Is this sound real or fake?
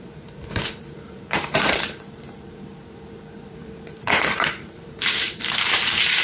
fake